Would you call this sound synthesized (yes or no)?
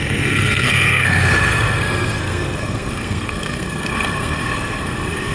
yes